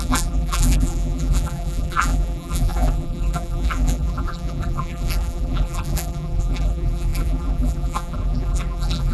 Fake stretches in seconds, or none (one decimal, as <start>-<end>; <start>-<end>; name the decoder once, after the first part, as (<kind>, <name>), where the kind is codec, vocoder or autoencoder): 0.0-9.1 (vocoder, BigVGAN v2)